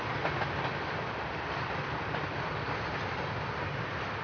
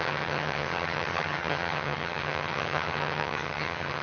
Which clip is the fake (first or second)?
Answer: second